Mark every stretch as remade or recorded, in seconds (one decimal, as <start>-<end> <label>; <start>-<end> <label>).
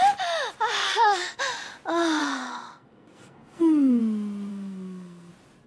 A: 0.0-0.8 recorded; 0.8-1.4 remade; 1.4-2.2 recorded; 2.2-4.0 remade; 4.0-4.5 recorded; 4.5-5.3 remade; 5.3-5.7 recorded